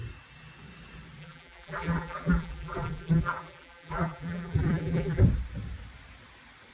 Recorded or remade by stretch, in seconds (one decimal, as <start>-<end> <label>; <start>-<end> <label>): 0.0-1.2 recorded; 1.2-5.2 remade; 5.2-6.7 recorded